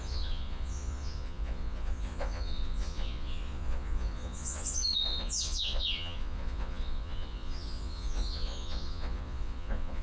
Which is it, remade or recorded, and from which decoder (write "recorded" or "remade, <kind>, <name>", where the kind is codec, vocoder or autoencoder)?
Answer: remade, vocoder, Vocos